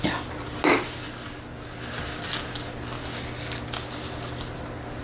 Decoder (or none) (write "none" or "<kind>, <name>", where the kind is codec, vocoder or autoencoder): none